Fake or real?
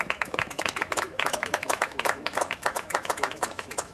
fake